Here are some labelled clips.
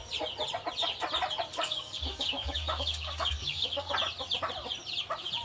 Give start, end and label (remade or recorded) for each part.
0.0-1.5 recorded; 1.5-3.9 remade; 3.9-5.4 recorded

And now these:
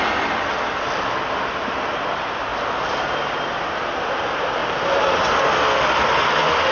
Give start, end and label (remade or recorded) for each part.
0.0-6.7 recorded

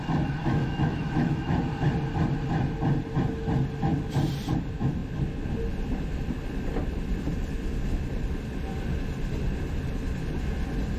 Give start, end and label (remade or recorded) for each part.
0.0-0.4 recorded; 0.4-1.6 remade; 1.6-11.0 recorded

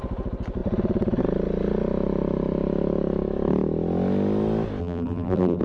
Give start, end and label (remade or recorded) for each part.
0.0-4.8 recorded; 4.8-5.6 remade

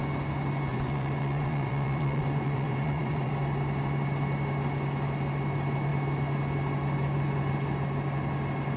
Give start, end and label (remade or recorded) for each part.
0.0-0.7 recorded; 0.7-3.3 remade; 3.3-8.8 recorded

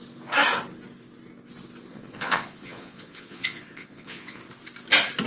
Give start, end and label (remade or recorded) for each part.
0.0-1.9 recorded; 1.9-4.4 remade; 4.4-5.3 recorded